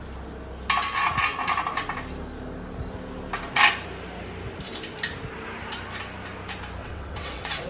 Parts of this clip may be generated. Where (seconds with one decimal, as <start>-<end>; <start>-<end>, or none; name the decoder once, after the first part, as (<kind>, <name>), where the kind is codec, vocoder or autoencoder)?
6.8-7.7 (vocoder, WaveNeXt)